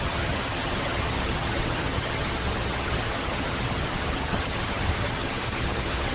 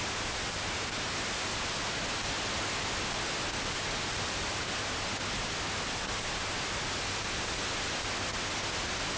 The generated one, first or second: first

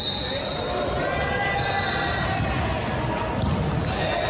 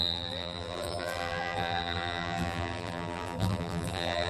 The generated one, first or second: second